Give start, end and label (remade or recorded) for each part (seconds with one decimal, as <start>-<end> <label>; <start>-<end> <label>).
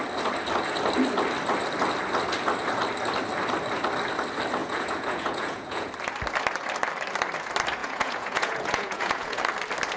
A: 0.0-4.6 recorded; 4.6-5.9 remade; 5.9-7.8 recorded; 7.8-9.4 remade; 9.4-10.0 recorded